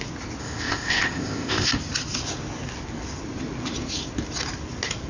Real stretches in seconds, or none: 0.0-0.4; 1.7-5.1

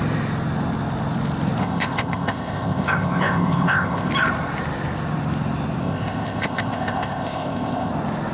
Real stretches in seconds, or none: 0.0-1.6; 4.1-5.8; 7.9-8.3

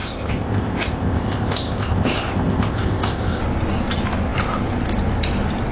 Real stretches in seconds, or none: 3.4-5.7

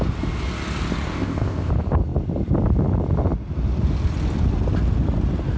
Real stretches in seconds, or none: 0.0-1.1; 1.7-5.6